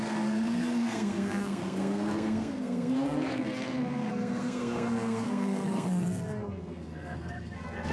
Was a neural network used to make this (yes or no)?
yes